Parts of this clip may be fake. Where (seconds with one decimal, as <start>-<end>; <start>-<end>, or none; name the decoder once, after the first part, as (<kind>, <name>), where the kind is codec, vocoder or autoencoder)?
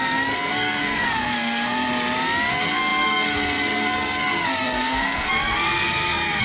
0.0-1.9 (codec, SNAC); 2.5-6.4